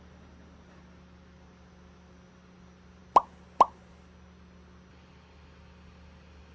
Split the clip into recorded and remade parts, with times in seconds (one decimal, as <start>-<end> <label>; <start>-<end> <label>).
0.0-6.5 recorded